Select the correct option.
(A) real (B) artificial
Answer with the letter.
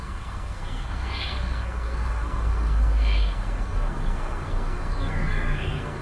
B